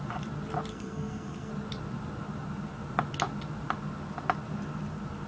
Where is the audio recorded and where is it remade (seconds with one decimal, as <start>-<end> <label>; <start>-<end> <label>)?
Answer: 0.0-0.7 recorded; 0.7-1.5 remade; 1.5-5.3 recorded